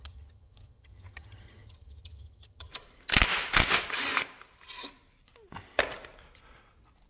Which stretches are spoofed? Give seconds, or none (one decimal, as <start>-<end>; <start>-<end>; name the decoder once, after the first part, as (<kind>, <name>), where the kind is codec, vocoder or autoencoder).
0.0-2.7 (vocoder, HiFi-GAN)